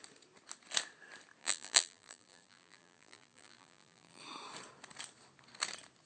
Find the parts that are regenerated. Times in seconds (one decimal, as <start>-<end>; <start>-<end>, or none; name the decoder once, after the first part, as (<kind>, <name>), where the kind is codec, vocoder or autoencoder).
1.4-4.2 (vocoder, BigVGAN v2)